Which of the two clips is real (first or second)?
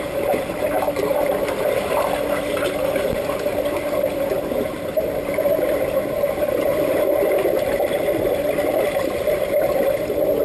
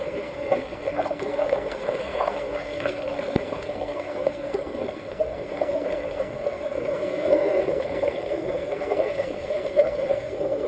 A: first